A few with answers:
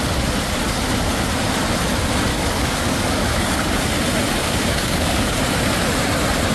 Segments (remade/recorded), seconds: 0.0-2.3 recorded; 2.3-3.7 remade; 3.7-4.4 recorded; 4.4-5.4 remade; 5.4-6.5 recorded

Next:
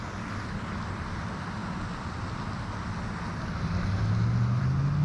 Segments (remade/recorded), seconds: 0.0-5.0 recorded